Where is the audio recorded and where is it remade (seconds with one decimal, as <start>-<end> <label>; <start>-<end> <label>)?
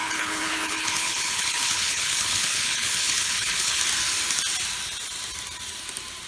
0.0-3.8 remade; 3.8-6.3 recorded